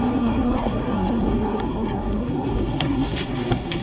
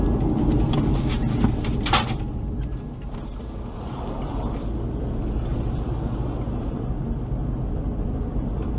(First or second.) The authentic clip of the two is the second